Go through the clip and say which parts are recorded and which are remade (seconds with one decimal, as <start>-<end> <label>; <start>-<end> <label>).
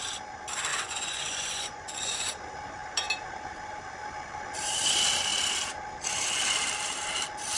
0.0-0.7 recorded; 0.7-2.3 remade; 2.3-7.6 recorded